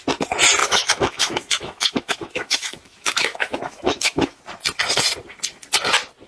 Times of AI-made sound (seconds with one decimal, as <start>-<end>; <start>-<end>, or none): 0.6-4.4